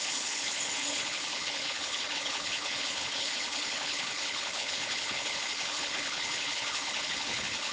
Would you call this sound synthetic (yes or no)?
yes